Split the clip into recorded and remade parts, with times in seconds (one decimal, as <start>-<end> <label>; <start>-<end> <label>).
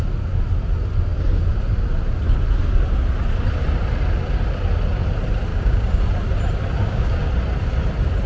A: 0.0-5.5 recorded; 5.5-6.0 remade; 6.0-6.8 recorded; 6.8-7.3 remade; 7.3-8.3 recorded